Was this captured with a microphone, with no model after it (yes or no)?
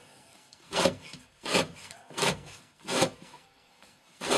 no